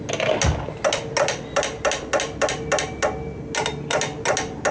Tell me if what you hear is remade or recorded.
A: recorded